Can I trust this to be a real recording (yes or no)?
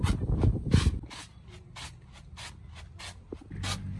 yes